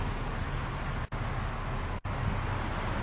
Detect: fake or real real